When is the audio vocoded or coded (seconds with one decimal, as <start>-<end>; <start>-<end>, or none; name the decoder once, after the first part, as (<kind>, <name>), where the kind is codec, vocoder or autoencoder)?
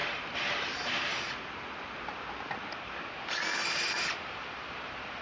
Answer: 3.6-5.2 (vocoder, BigVGAN v2)